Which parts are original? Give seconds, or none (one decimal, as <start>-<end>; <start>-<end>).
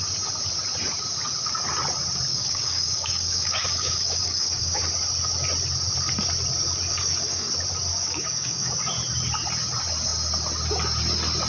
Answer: 0.0-2.3; 4.8-6.9; 7.5-7.9; 8.7-11.5